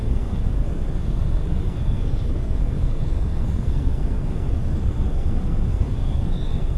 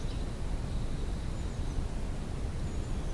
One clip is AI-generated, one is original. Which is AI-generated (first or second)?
first